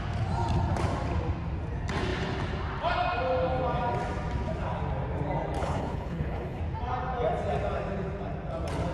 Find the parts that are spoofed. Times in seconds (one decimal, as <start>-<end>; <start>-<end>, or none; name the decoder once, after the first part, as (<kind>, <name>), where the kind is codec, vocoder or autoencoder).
5.6-6.6 (codec, HILCodec)

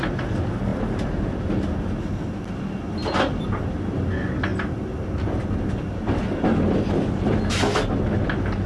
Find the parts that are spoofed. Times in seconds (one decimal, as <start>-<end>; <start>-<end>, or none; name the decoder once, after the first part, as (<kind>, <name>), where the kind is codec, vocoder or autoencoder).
none

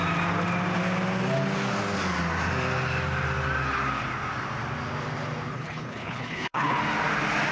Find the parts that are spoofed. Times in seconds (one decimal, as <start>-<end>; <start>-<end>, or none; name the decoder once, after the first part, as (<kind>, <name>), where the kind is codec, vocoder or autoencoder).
5.5-6.8 (codec, HILCodec)

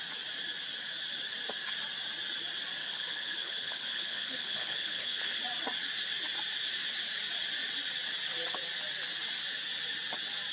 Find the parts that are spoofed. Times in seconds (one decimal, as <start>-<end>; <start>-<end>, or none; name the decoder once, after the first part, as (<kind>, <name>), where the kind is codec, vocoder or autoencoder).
2.8-5.4 (codec, HILCodec)

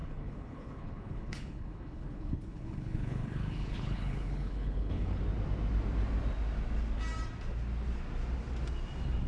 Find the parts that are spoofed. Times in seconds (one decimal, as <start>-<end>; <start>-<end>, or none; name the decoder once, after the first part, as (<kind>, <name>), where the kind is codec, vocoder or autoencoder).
0.0-5.2 (codec, HILCodec)

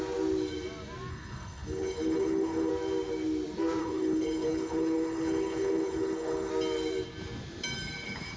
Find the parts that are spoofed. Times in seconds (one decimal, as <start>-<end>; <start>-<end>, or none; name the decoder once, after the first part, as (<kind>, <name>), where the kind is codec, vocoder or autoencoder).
1.1-2.7 (codec, HILCodec); 3.8-6.5